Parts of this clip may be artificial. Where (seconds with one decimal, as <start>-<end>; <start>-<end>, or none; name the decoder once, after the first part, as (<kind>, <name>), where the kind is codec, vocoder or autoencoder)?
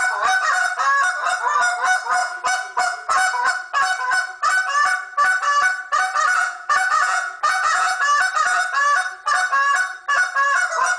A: 2.2-3.5 (vocoder, Vocos); 6.4-8.0